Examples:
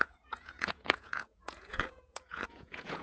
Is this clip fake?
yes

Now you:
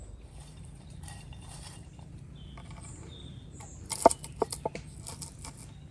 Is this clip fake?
no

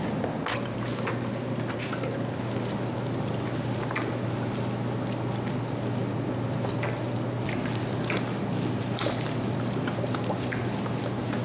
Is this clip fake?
no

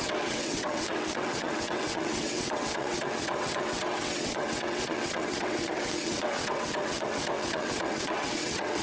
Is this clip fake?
yes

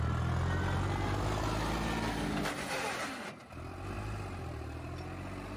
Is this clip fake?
no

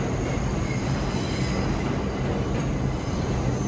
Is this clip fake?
no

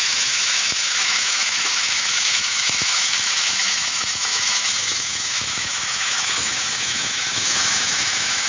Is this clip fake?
yes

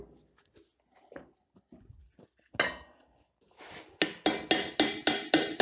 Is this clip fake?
no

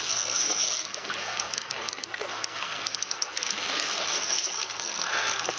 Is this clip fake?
yes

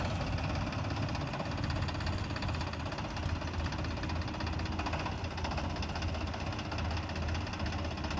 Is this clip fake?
no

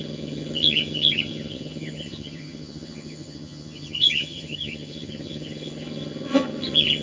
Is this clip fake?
yes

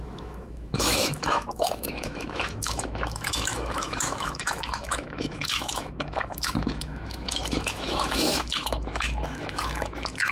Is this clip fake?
yes